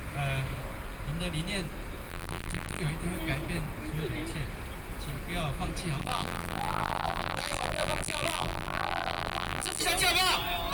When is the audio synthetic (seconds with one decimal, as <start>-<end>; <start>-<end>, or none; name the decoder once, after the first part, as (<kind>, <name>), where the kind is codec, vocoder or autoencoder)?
2.1-2.8 (vocoder, BigVGAN v2); 6.0-9.8

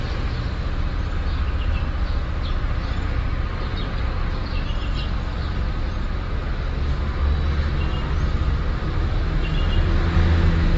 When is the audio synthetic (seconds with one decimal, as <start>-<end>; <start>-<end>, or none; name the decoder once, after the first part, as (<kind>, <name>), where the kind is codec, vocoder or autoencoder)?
none